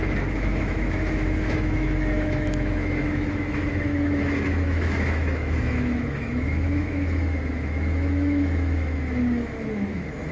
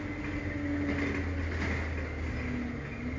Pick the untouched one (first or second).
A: second